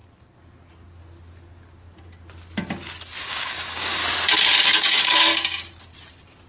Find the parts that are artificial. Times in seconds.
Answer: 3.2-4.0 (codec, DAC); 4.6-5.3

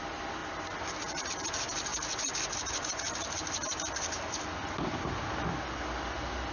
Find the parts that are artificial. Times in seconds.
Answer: 0.4-1.3 (vocoder, BigVGAN v2)

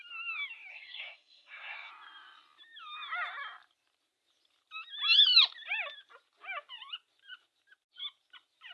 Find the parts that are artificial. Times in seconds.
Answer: 0.7-1.9 (codec, SNAC)

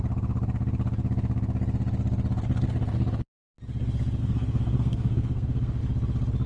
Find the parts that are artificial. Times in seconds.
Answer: 4.2-5.8 (codec, SNAC)

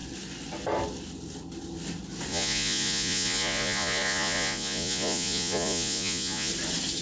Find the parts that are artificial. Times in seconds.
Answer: 2.3-6.5 (vocoder, Vocos)

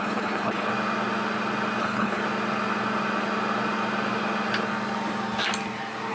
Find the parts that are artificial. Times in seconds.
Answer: 0.0-0.7 (codec, HILCodec); 1.8-2.2

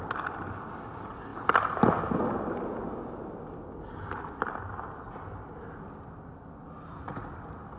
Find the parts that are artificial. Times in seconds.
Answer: none

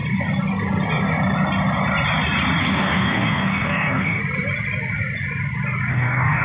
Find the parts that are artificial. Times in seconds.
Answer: 2.6-4.2 (codec, DAC); 5.9-6.4